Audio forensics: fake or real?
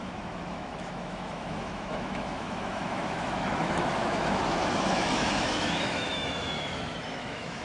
fake